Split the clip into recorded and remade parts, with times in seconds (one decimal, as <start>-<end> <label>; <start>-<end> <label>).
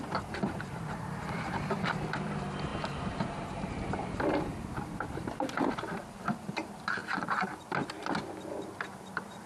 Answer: 0.0-7.0 remade; 7.0-8.6 recorded; 8.6-9.5 remade